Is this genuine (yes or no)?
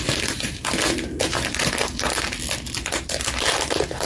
yes